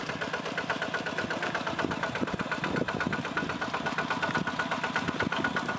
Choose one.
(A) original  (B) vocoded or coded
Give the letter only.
A